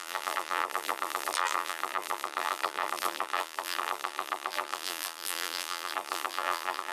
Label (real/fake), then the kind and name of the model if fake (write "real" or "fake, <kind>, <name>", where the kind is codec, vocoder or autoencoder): fake, vocoder, BigVGAN v2